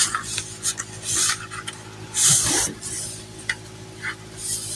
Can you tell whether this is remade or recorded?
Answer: recorded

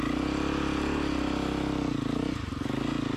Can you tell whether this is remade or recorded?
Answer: recorded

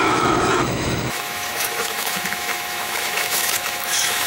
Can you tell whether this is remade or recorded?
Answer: remade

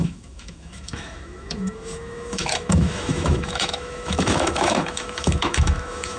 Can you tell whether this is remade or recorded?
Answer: remade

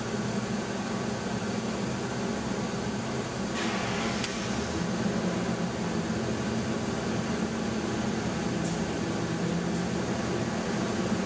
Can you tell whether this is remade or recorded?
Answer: recorded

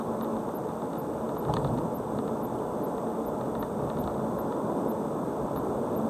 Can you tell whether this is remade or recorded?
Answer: recorded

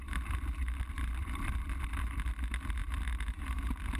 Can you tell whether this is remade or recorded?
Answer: recorded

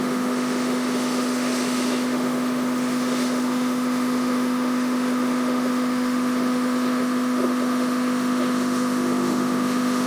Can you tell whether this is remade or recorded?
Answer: remade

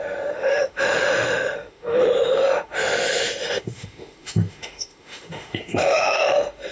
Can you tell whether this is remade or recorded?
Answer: remade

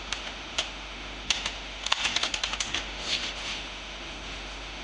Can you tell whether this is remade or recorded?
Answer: remade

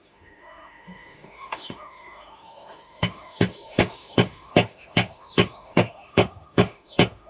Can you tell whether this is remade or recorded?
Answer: remade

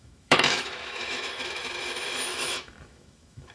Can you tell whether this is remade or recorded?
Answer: remade